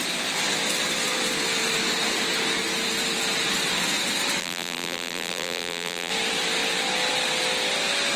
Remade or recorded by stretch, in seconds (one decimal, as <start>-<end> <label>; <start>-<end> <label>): 0.0-4.4 recorded; 4.4-6.1 remade; 6.1-8.2 recorded